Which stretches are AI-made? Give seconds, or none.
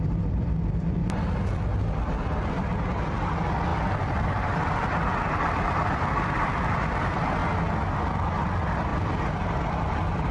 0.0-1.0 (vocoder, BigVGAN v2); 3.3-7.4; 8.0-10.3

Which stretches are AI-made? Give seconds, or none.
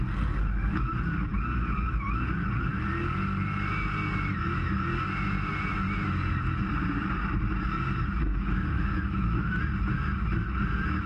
8.3-9.6 (autoencoder, DAC-VAE)